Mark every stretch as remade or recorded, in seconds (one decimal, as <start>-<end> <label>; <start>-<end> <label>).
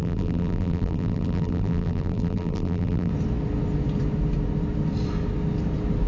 0.0-3.1 remade; 3.1-6.1 recorded